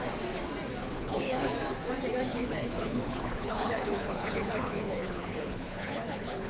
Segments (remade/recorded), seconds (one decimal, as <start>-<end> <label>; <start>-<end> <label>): 0.0-0.8 recorded; 0.8-1.5 remade; 1.5-2.3 recorded; 2.3-6.5 remade